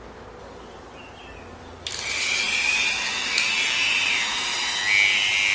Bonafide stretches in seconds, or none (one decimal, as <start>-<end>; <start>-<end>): 0.0-1.5; 4.8-5.5